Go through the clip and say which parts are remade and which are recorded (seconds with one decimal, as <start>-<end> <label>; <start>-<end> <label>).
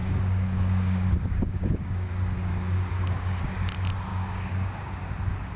0.0-3.4 remade; 3.4-4.1 recorded; 4.1-4.9 remade; 4.9-5.6 recorded